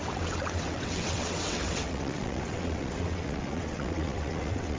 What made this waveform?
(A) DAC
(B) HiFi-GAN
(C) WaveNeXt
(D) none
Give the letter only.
C